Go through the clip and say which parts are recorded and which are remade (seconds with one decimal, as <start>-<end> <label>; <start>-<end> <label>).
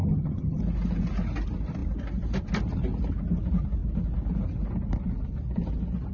0.0-0.6 remade; 0.6-6.1 recorded